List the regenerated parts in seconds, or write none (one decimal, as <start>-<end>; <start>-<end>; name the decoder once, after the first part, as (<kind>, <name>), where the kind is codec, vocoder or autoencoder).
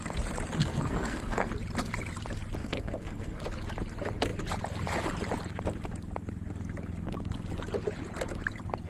0.6-1.5 (codec, SNAC); 2.6-3.4